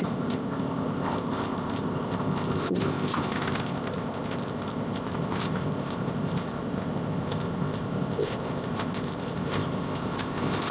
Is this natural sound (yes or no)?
no